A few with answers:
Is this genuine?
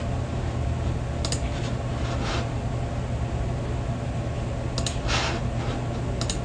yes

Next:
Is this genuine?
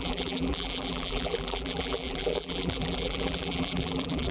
no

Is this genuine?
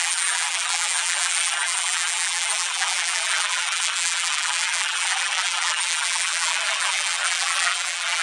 no